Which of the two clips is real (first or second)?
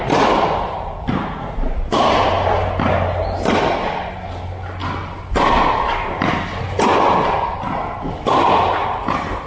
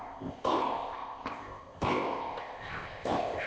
first